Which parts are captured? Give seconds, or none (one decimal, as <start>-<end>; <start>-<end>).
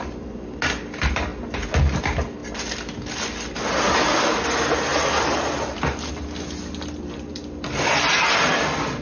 0.0-9.0